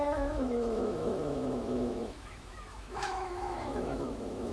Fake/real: fake